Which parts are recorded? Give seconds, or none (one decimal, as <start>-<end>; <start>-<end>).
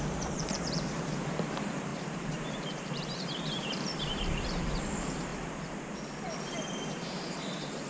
5.3-6.4